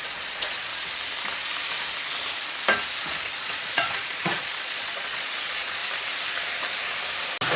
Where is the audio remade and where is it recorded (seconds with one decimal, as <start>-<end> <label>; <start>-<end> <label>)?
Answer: 0.0-0.7 remade; 0.7-3.1 recorded; 3.1-5.8 remade; 5.8-7.6 recorded